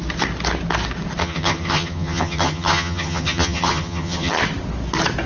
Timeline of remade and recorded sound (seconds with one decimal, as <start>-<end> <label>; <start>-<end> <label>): 0.0-1.2 recorded; 1.2-4.4 remade; 4.4-5.3 recorded